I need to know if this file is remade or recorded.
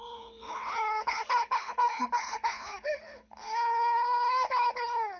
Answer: remade